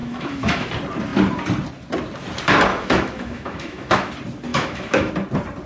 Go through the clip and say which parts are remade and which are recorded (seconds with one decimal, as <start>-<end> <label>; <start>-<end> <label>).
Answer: 0.0-0.7 remade; 0.7-2.7 recorded; 2.7-4.1 remade; 4.1-4.5 recorded; 4.5-5.1 remade; 5.1-5.7 recorded